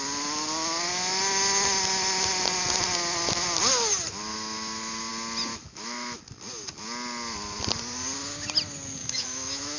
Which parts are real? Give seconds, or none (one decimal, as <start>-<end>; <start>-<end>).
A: 0.0-4.3; 5.1-5.5; 6.2-9.0